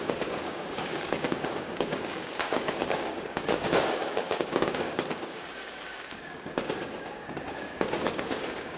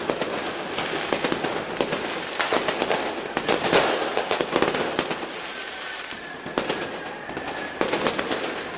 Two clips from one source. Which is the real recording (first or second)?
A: second